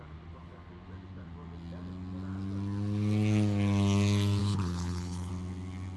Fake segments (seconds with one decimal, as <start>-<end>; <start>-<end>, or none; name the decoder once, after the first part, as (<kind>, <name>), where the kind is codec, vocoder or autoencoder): 4.4-5.3 (codec, HILCodec)